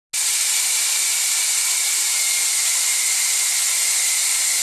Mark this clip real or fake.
real